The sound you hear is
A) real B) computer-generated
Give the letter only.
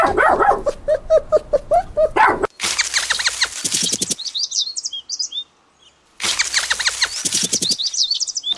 A